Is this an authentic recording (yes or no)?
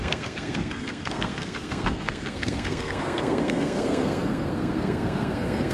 no